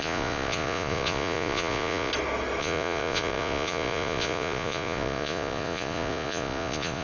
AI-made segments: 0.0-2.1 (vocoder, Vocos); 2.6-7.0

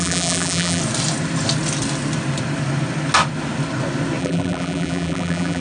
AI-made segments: 0.0-0.8 (vocoder, BigVGAN v2); 4.2-5.6

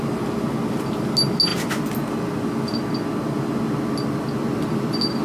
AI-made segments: none

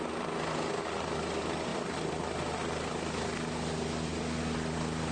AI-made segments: none

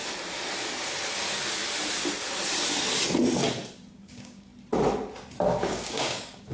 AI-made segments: 3.9-4.5 (codec, DAC); 5.6-6.5

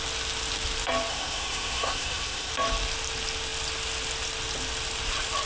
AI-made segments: 1.1-2.5 (codec, SNAC)

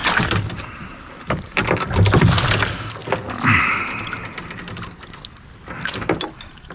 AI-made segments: none

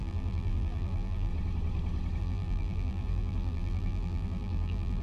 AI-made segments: 0.0-1.3 (vocoder, BigVGAN v2); 2.2-5.0